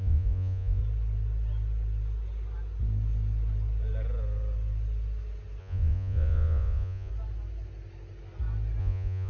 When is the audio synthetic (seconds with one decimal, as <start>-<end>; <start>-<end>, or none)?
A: 0.0-0.8; 5.6-7.1; 8.8-9.3